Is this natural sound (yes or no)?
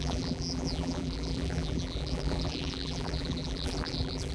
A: no